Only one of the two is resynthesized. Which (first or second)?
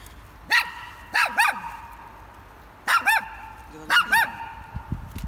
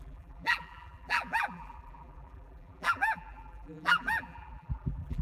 second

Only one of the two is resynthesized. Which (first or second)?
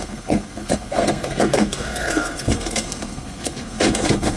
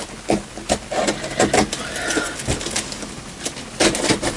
first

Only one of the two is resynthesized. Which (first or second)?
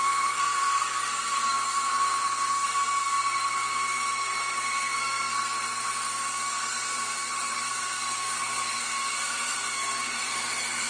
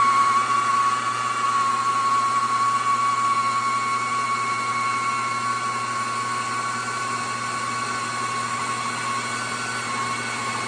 first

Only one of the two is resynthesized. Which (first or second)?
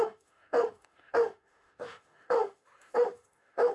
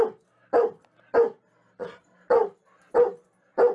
first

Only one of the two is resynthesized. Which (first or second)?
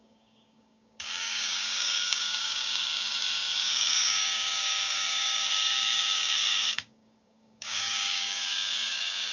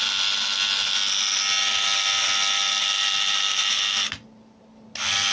first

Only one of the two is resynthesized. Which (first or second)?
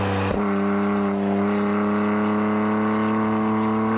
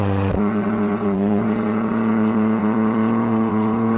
second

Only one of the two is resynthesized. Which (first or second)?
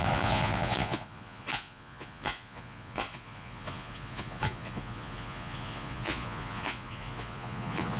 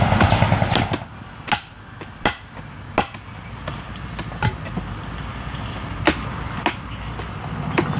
first